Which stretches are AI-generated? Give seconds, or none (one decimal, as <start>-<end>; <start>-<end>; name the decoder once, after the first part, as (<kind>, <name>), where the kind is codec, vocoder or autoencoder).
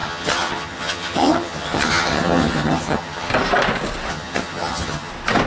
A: 0.0-3.3 (vocoder, HiFi-GAN); 4.1-5.1